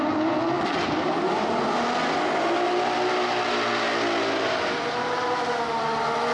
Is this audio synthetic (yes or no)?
no